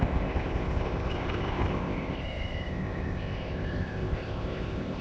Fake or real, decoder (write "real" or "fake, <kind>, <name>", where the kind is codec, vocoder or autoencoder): fake, codec, ZipCodec